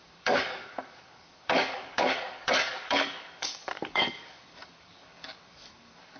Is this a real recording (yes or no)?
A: no